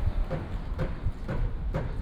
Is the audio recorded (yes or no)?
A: no